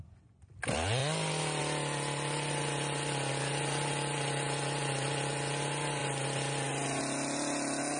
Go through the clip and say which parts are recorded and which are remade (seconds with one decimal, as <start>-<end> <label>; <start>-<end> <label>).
0.0-8.0 recorded